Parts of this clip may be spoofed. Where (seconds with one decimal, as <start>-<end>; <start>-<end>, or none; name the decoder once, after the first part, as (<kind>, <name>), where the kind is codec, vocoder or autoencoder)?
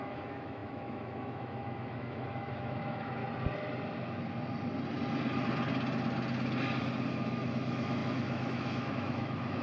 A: 0.0-3.2 (autoencoder, DAC-VAE); 7.1-9.6